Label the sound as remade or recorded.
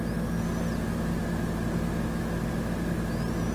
recorded